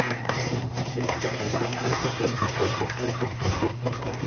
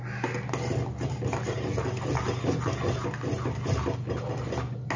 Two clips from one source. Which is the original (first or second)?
second